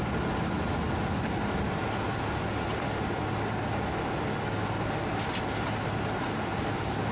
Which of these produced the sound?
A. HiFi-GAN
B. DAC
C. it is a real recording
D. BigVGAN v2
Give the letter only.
C